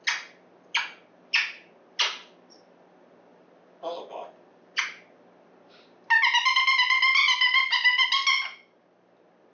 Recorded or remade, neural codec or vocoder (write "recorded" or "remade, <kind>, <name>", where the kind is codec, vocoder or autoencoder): recorded